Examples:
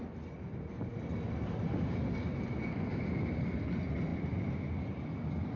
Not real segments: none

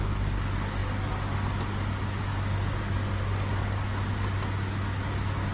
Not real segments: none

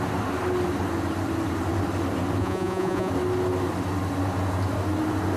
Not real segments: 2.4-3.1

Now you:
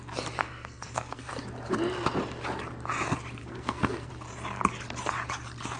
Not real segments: 0.4-1.3; 3.4-4.1

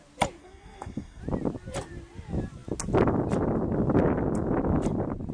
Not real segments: 0.4-1.2

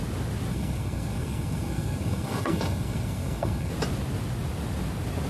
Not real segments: 0.5-3.7